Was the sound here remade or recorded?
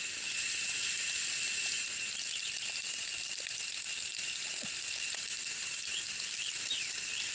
recorded